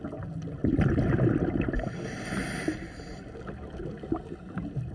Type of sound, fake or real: real